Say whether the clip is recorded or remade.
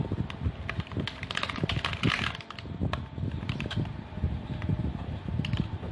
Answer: remade